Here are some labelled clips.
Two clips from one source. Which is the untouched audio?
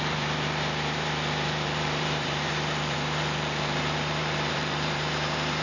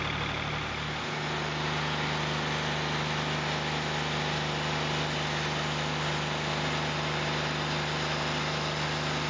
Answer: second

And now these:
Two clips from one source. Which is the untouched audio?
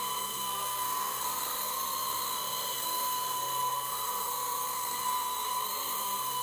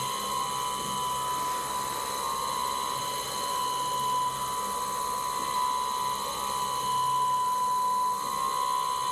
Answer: second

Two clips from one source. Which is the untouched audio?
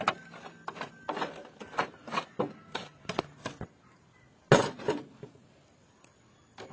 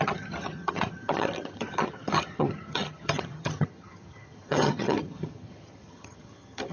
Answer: first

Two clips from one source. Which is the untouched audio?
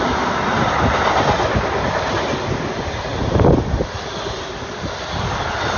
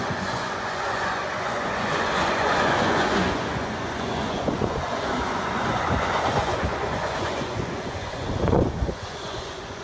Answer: first